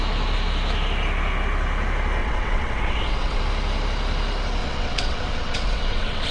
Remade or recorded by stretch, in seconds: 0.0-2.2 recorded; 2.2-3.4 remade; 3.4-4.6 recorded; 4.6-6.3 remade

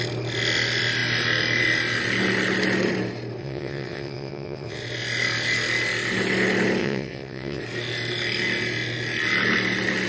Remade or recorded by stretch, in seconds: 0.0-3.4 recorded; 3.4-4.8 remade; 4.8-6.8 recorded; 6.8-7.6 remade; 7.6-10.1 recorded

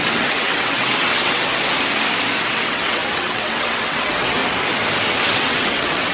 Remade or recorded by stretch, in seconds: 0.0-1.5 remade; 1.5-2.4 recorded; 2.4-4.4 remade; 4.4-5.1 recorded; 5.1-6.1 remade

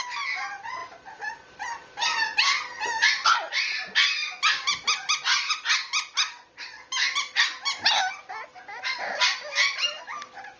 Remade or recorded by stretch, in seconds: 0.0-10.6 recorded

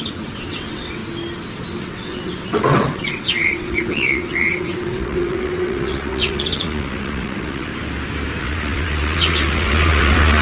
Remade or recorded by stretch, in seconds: 0.0-1.0 remade; 1.0-1.8 recorded; 1.8-7.7 remade; 7.7-8.4 recorded; 8.4-10.4 remade

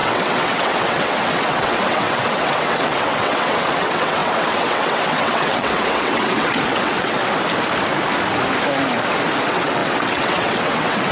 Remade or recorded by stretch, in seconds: 0.0-7.2 remade; 7.2-9.4 recorded; 9.4-11.1 remade

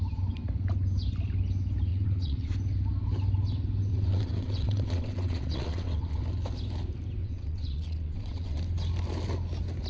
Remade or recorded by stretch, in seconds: 0.0-1.9 recorded; 1.9-2.5 remade; 2.5-3.9 recorded; 3.9-6.2 remade; 6.2-7.2 recorded; 7.2-8.6 remade; 8.6-9.9 recorded

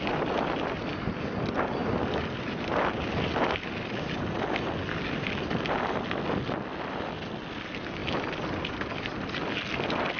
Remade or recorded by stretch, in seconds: 0.0-10.2 recorded